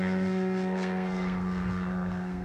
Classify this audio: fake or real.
fake